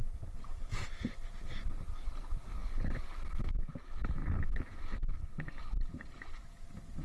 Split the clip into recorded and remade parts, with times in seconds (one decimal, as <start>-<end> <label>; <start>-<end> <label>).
0.0-7.0 recorded